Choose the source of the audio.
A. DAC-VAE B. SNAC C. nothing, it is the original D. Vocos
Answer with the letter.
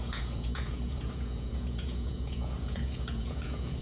D